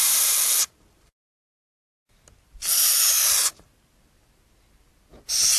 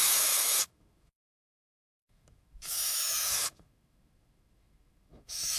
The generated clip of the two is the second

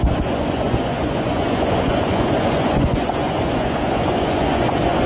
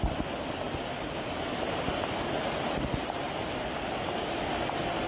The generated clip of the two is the first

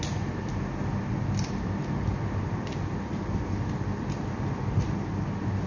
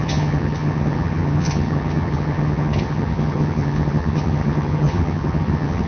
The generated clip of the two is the second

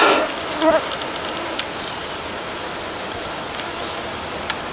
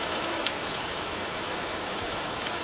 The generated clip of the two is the second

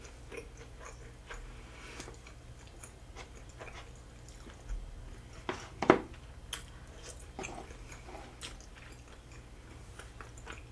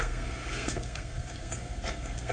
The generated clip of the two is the second